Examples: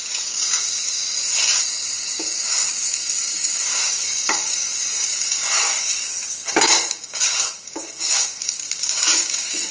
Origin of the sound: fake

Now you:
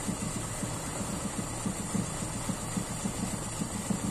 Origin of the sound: real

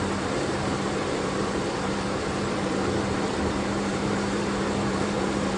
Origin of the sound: fake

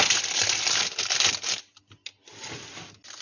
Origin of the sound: real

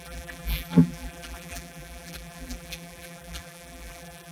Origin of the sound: fake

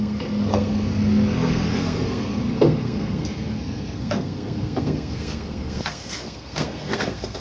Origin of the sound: fake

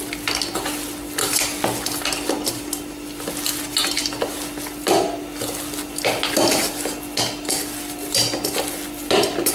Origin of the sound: real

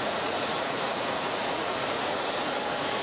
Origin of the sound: fake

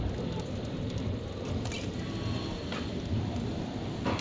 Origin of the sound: real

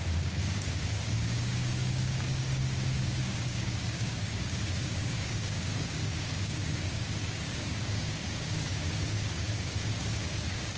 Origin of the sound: fake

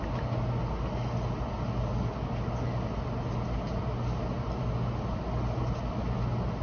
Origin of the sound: real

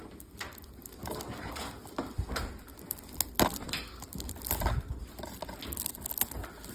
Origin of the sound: real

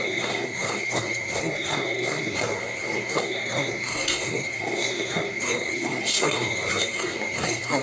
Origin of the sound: fake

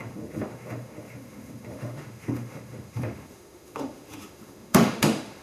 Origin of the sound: fake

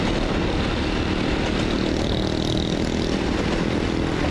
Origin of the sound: real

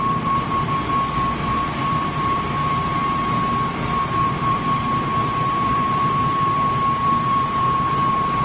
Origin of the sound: fake